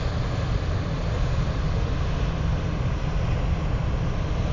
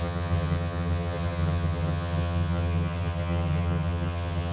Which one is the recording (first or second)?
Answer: first